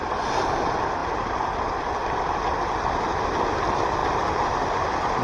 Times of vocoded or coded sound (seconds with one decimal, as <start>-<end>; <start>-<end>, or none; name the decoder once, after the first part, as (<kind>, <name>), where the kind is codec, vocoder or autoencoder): none